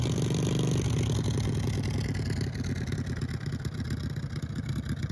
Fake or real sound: real